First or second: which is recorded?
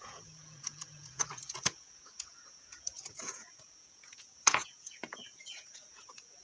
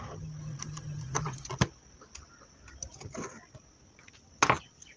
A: second